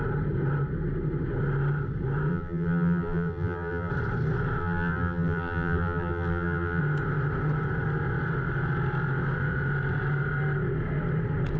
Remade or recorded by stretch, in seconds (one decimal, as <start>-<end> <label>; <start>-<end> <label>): 0.0-2.3 recorded; 2.3-3.9 remade; 3.9-4.6 recorded; 4.6-6.8 remade; 6.8-11.6 recorded